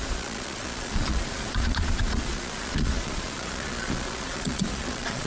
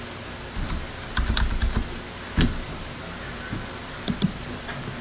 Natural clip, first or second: second